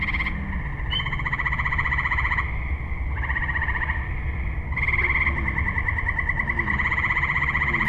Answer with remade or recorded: remade